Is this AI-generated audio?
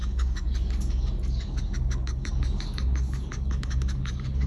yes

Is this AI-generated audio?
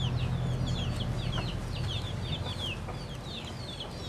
no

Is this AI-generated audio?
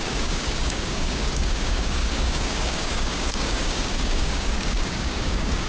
yes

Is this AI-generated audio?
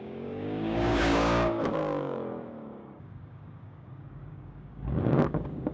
yes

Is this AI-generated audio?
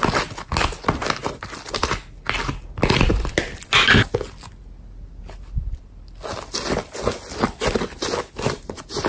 no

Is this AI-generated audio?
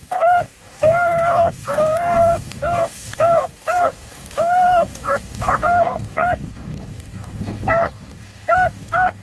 yes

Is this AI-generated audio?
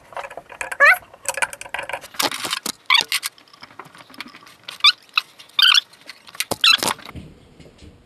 no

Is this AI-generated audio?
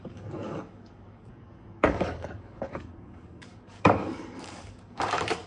yes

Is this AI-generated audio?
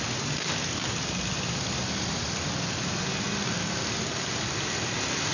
no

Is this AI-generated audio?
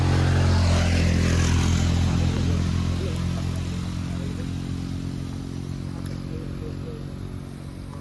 no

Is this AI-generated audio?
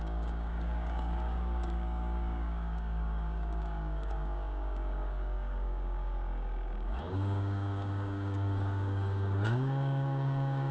yes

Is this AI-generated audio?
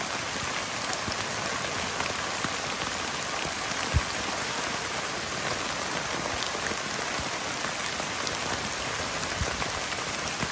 no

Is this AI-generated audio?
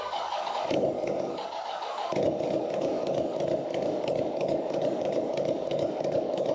yes